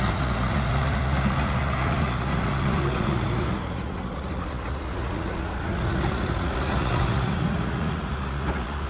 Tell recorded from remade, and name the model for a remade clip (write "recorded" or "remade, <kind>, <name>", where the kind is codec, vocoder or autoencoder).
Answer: remade, vocoder, Vocos